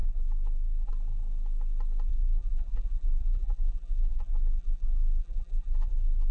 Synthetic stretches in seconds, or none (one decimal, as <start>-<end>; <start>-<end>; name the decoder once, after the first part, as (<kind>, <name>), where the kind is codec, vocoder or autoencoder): 0.0-0.9 (vocoder, BigVGAN v2); 2.1-6.3